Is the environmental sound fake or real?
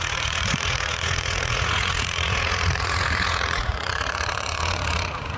fake